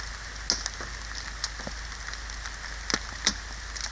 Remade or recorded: recorded